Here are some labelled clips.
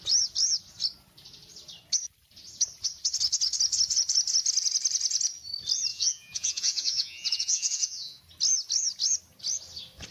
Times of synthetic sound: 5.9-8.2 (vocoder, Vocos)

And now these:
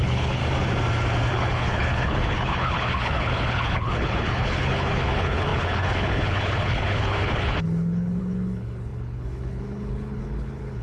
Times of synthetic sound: 0.0-0.4 (codec, HILCodec); 1.3-10.8

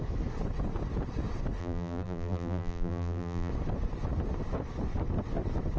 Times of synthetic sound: 1.6-3.5 (vocoder, BigVGAN v2)

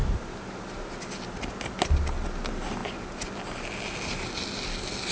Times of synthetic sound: none

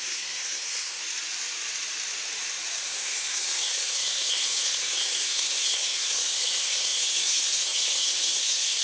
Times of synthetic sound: 0.0-1.0 (codec, SNAC); 2.8-8.8